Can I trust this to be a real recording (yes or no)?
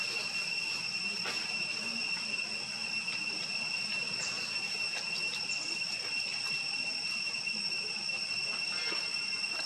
yes